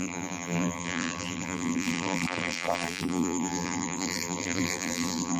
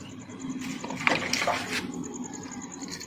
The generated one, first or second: first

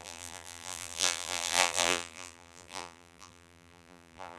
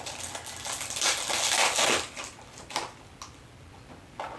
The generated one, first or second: first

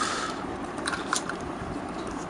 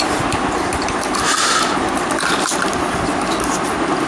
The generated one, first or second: first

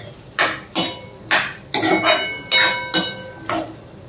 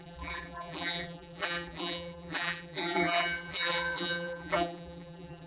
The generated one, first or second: second